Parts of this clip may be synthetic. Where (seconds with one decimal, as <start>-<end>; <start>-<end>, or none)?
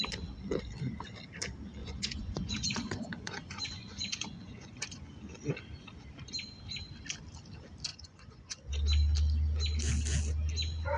1.8-5.1; 7.9-8.7